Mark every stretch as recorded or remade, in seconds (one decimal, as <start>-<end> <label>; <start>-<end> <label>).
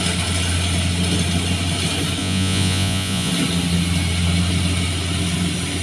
0.0-2.2 recorded; 2.2-3.3 remade; 3.3-5.8 recorded